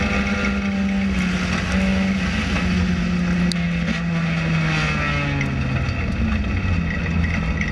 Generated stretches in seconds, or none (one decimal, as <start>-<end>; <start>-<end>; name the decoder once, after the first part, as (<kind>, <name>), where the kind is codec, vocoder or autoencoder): none